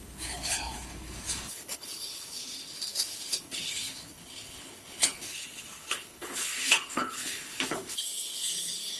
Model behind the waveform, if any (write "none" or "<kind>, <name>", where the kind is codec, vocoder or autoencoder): codec, HILCodec